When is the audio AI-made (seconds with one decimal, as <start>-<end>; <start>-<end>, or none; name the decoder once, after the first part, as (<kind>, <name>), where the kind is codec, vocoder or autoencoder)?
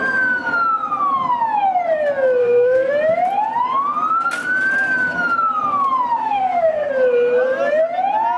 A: 2.4-2.9 (codec, SNAC); 6.2-6.9